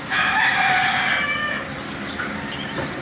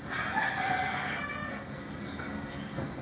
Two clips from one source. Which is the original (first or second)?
first